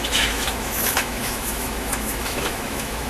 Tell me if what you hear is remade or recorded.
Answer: remade